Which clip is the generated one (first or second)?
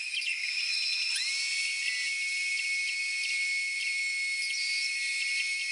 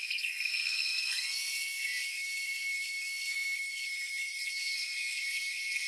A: second